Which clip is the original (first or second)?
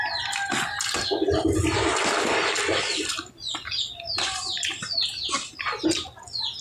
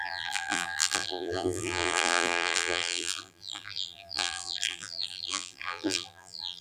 first